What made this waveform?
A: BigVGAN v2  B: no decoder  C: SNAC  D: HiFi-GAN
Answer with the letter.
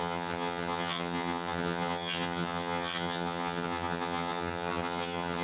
D